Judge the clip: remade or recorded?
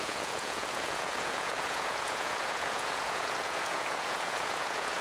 remade